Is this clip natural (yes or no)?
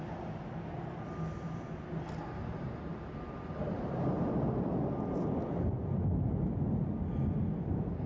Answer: yes